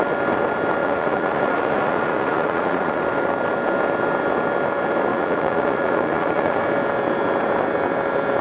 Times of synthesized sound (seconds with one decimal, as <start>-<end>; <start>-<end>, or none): 0.8-3.0; 5.1-6.6